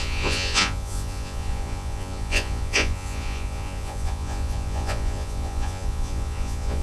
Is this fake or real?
fake